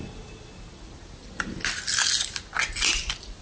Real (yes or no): yes